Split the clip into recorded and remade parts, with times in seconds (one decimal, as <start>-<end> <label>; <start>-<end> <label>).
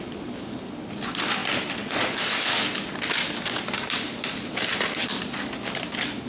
0.0-6.3 recorded